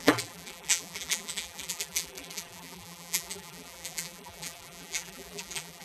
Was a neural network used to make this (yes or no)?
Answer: yes